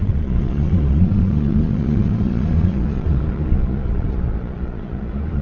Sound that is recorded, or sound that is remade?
remade